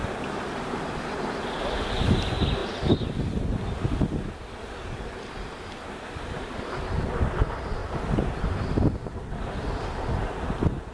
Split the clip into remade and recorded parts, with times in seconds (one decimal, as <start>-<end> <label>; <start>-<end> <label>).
0.0-2.6 remade; 2.6-5.0 recorded; 5.0-10.9 remade